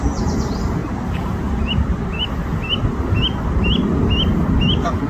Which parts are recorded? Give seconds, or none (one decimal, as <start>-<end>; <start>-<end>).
0.0-0.8; 2.4-5.1